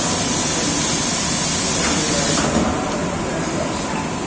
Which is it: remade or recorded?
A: remade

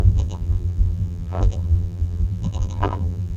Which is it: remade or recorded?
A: remade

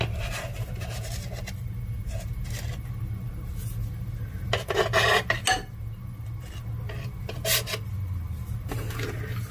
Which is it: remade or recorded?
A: recorded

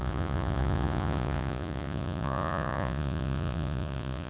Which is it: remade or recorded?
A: remade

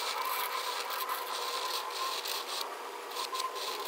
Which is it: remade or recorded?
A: recorded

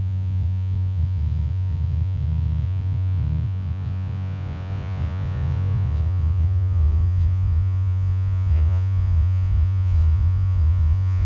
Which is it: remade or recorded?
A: remade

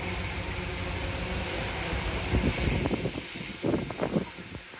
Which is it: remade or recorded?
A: recorded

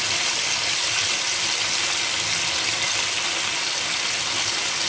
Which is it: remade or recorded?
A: recorded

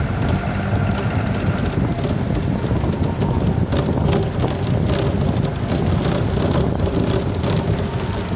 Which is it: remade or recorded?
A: recorded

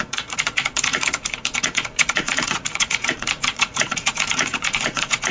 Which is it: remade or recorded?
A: remade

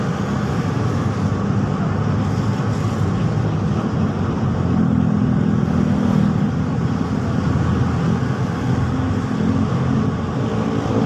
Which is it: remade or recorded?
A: recorded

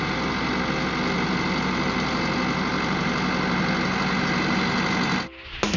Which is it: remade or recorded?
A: recorded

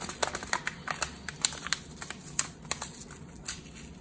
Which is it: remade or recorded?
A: recorded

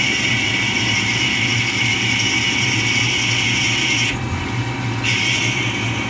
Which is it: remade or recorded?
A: recorded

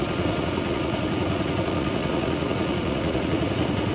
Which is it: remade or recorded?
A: remade